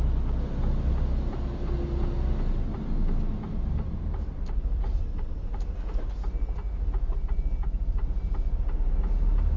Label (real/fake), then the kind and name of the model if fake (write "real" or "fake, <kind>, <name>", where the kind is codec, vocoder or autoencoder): real